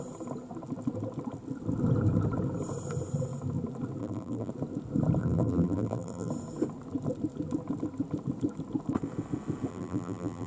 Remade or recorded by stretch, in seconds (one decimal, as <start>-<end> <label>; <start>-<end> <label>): 0.0-4.0 recorded; 4.0-4.5 remade; 4.5-5.2 recorded; 5.2-6.3 remade; 6.3-9.7 recorded; 9.7-10.5 remade